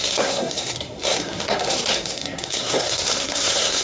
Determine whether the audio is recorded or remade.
remade